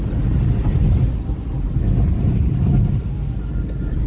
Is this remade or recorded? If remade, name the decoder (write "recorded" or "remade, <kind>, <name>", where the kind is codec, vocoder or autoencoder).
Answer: recorded